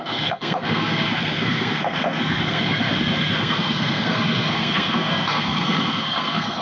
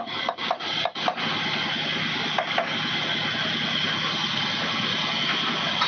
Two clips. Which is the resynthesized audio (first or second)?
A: first